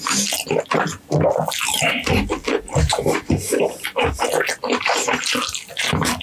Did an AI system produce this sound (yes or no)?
no